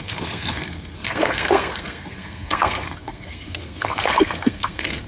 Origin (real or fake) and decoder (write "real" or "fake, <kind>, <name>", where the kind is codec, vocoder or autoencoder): fake, codec, SNAC